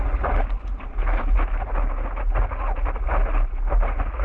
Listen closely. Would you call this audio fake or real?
real